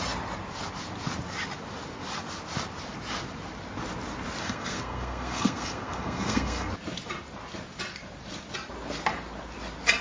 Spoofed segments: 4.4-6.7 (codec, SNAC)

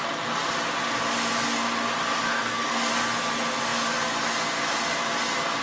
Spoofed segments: 2.3-2.9 (codec, SNAC)

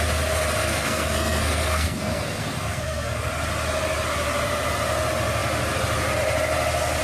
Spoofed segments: 0.6-3.3 (codec, SNAC)

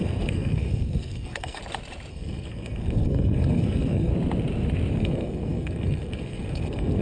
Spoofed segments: 0.0-1.6 (codec, SNAC); 2.1-4.1; 4.9-7.0

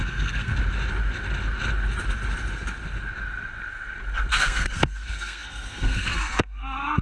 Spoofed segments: 0.0-0.5 (codec, SNAC); 4.3-7.0